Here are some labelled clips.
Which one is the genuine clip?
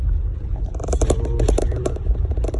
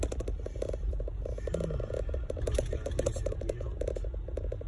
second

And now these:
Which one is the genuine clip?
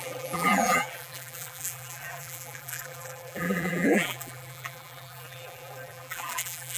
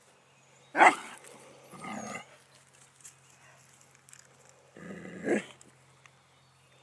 second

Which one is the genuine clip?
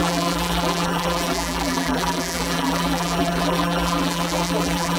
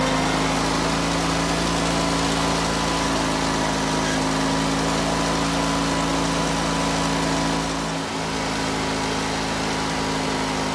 second